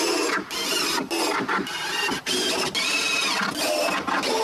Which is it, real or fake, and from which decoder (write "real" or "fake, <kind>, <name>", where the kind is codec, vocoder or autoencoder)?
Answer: real